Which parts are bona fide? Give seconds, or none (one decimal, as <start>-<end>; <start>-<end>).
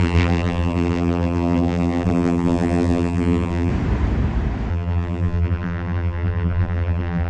3.7-4.7